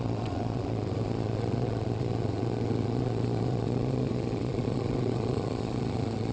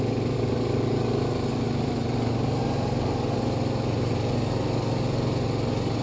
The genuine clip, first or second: second